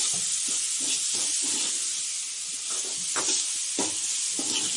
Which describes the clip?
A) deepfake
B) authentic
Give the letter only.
B